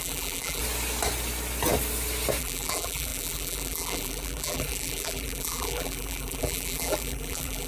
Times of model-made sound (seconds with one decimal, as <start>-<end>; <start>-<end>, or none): 0.0-0.6; 2.4-7.7